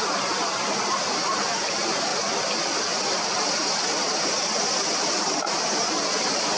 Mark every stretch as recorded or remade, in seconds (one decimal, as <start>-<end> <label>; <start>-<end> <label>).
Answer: 0.0-6.6 recorded